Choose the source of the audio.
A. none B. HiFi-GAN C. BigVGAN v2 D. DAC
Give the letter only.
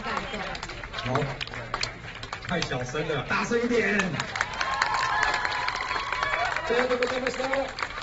C